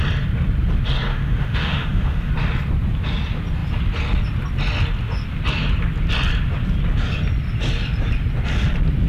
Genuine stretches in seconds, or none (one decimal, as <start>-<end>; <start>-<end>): 0.0-1.1; 2.3-9.1